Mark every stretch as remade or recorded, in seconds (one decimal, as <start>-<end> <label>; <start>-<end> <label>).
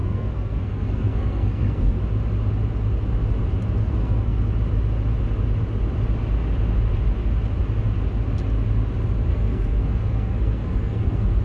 0.0-2.0 remade; 2.0-3.8 recorded; 3.8-4.4 remade; 4.4-9.3 recorded; 9.3-11.4 remade